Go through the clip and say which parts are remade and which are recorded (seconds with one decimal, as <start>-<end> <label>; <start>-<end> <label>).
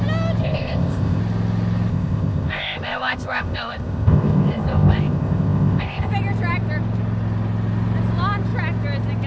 0.0-0.4 recorded; 0.4-1.2 remade; 1.2-1.9 recorded; 1.9-6.1 remade; 6.1-9.3 recorded